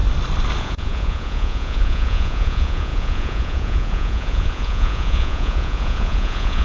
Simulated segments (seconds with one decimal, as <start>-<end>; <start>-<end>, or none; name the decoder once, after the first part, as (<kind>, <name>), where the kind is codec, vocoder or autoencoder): 0.6-6.6 (vocoder, Vocos)